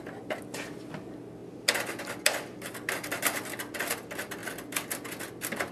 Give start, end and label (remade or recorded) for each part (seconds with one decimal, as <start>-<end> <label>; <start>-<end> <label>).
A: 0.0-5.7 recorded